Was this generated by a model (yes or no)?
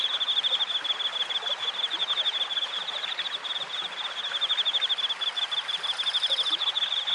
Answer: no